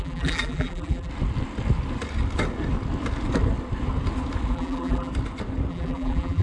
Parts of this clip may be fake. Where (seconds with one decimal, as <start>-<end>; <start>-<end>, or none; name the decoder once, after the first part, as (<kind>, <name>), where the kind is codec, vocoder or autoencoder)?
0.0-1.1 (vocoder, BigVGAN v2); 4.5-5.1; 5.7-6.4